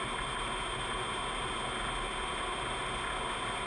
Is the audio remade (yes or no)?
no